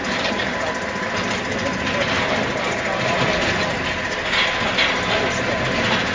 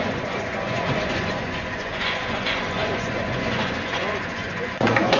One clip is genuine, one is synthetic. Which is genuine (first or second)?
first